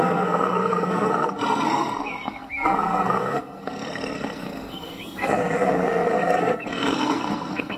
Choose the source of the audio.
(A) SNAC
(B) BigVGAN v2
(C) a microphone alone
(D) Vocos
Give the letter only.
A